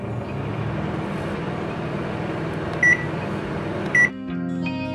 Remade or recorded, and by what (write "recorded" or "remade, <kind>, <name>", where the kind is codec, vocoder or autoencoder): recorded